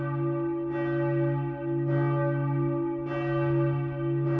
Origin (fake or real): real